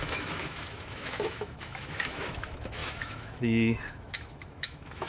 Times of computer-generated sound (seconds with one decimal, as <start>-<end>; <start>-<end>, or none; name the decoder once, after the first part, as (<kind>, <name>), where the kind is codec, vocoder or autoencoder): 0.0-5.1 (autoencoder, DAC-VAE)

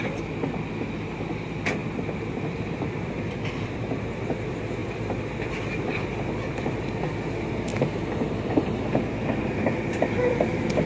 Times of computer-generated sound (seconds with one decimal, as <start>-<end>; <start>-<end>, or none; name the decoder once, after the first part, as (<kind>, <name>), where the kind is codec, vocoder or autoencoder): 1.8-3.8 (vocoder, BigVGAN v2); 4.8-7.0; 7.7-9.2

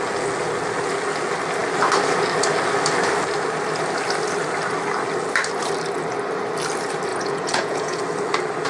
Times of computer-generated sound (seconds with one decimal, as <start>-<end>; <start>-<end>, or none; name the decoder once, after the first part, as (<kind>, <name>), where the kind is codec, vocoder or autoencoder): 7.1-8.0 (vocoder, Vocos)

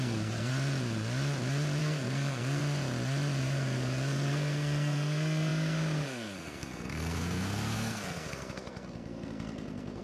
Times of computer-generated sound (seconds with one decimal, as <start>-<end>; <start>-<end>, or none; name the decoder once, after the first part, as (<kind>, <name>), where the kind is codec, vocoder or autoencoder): 0.0-0.5 (codec, SNAC); 1.8-2.6; 3.4-10.0